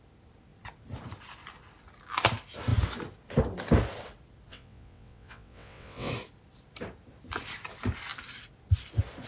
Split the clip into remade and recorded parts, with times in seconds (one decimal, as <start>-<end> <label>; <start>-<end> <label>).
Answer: 0.0-4.5 recorded; 4.5-6.1 remade; 6.1-9.3 recorded